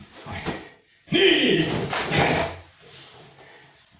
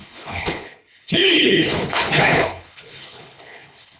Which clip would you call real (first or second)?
first